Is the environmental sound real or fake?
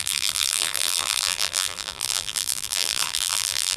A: fake